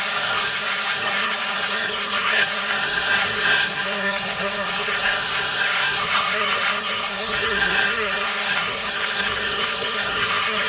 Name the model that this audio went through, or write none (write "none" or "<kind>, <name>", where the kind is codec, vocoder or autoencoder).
codec, SNAC